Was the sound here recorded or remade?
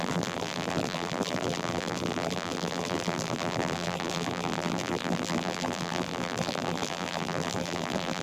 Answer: remade